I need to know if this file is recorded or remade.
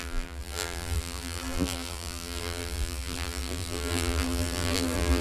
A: remade